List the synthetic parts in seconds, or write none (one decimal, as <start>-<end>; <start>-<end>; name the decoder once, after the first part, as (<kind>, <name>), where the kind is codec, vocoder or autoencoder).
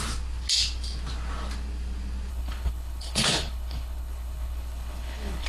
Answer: 2.3-5.5 (codec, HILCodec)